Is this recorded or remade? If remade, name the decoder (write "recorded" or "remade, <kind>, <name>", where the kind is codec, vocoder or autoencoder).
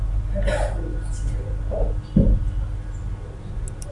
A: recorded